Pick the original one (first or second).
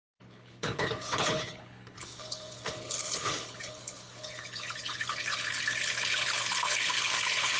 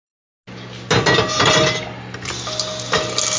second